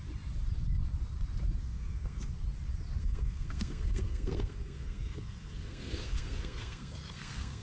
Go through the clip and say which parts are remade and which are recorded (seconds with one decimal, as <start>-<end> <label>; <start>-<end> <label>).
0.0-1.6 recorded; 1.6-2.3 remade; 2.3-3.0 recorded; 3.0-7.6 remade